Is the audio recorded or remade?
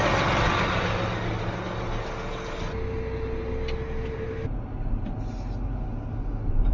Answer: recorded